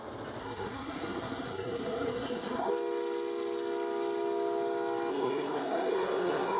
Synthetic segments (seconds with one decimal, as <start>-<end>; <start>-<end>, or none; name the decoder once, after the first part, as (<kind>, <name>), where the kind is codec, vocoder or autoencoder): 0.4-2.7 (codec, SNAC); 5.1-6.6